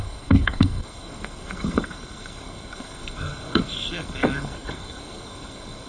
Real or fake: fake